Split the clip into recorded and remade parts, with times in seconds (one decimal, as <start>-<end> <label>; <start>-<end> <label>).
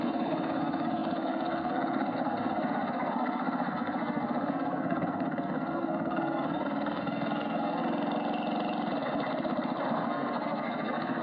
0.0-7.8 remade; 7.8-9.9 recorded; 9.9-11.2 remade